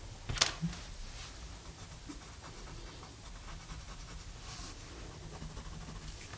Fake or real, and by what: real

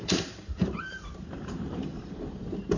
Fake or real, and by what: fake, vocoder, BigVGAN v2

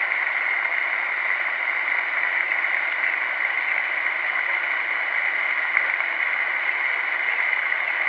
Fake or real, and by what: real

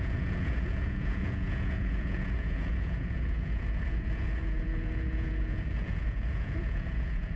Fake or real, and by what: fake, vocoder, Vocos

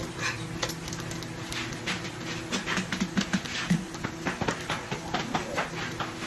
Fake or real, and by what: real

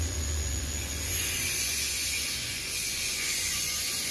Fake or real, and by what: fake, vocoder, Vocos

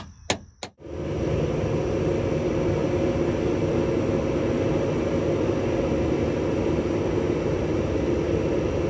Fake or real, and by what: real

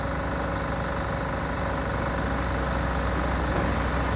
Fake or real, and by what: real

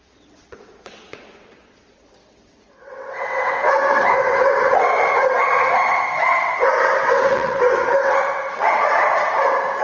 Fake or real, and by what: fake, vocoder, WaveNeXt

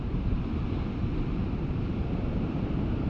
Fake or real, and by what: real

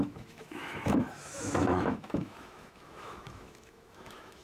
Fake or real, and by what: fake, autoencoder, DAC-VAE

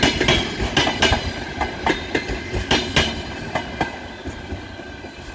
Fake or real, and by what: real